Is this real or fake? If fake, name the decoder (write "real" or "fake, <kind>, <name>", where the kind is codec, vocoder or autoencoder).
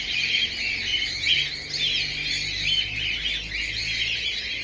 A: real